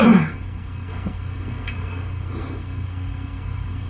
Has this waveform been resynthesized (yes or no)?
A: yes